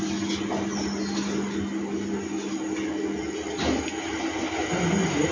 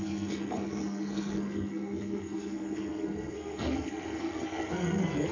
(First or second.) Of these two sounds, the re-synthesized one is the second